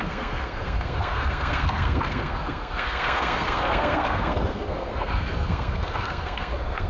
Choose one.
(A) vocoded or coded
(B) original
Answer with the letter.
A